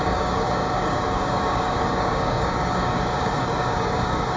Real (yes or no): no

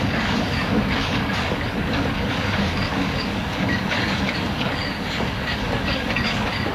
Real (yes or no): no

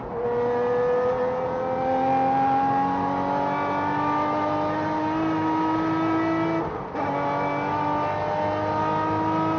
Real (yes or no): yes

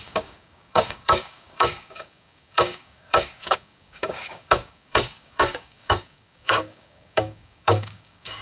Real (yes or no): no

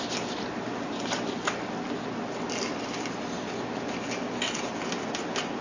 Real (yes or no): yes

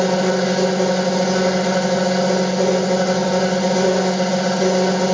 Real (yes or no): yes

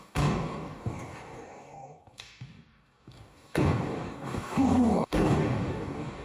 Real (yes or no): no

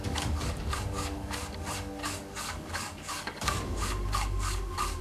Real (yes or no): no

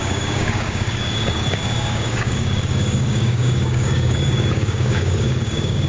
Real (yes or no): no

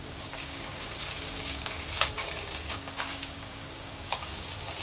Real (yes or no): no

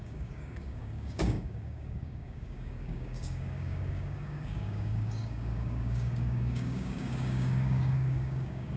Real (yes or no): no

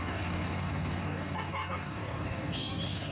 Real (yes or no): no